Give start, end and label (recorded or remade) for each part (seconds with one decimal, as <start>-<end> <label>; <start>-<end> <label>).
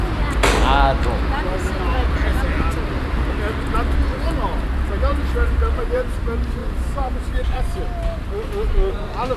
0.0-5.1 recorded; 5.1-6.1 remade; 6.1-6.6 recorded; 6.6-7.7 remade; 7.7-9.4 recorded